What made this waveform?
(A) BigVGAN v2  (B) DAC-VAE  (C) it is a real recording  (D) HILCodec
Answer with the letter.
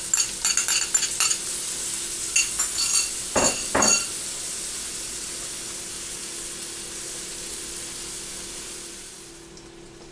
C